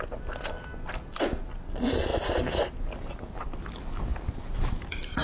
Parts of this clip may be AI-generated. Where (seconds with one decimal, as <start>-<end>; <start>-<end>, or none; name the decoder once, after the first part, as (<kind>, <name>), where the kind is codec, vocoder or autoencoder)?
none

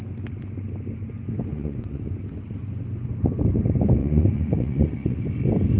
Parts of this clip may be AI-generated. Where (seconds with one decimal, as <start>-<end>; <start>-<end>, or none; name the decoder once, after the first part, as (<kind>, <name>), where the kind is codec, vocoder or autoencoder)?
1.5-2.0 (vocoder, Vocos); 4.0-5.2

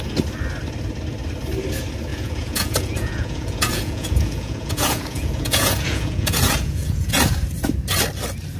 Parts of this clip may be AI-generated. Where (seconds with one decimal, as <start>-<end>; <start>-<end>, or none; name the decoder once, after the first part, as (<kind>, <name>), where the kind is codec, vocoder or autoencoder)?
2.1-7.1 (vocoder, Vocos)

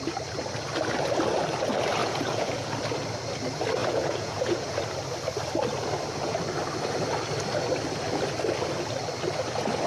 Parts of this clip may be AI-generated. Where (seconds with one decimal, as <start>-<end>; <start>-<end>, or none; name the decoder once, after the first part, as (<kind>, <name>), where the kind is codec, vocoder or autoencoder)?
2.0-2.7 (vocoder, Vocos); 3.8-4.8